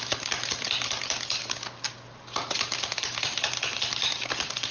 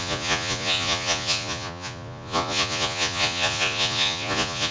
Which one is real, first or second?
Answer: first